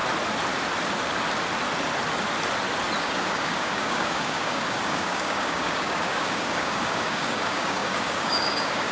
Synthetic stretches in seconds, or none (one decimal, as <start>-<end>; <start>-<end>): 3.0-8.9

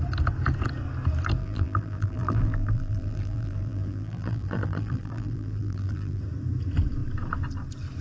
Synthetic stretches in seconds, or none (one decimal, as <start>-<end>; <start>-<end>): 1.4-6.2

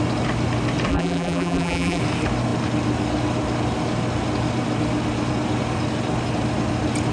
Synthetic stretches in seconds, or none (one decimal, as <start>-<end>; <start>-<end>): 0.9-2.0

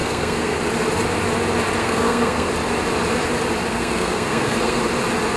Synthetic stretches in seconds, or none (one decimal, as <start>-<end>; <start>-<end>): 0.0-0.6; 1.8-2.5; 3.7-4.8